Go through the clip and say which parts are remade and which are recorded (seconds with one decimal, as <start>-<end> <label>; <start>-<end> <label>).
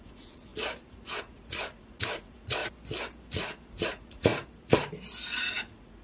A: 0.0-0.5 remade; 0.5-1.2 recorded; 1.2-2.6 remade; 2.6-3.9 recorded; 3.9-4.3 remade; 4.3-5.4 recorded; 5.4-6.0 remade